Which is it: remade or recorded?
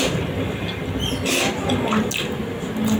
recorded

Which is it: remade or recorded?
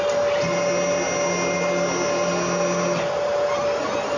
recorded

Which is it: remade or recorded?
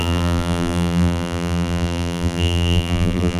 remade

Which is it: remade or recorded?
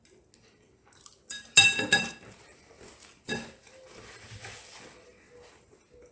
recorded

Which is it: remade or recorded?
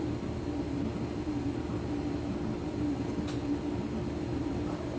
recorded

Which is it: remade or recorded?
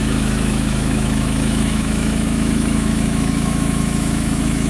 remade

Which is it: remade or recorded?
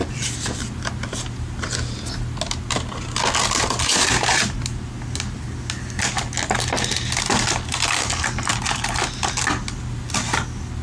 recorded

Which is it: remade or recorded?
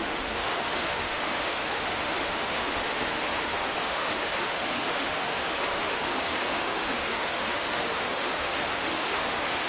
remade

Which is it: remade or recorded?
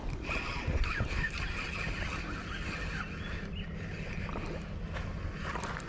recorded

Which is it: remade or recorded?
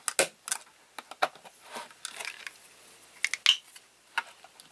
recorded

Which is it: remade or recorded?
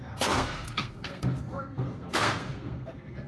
remade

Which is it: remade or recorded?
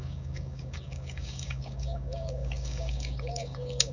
remade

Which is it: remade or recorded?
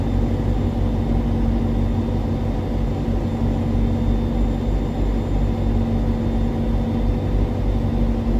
recorded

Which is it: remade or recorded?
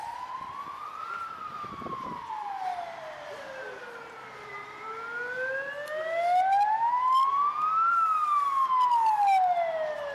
recorded